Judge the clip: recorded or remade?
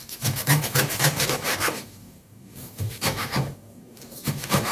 remade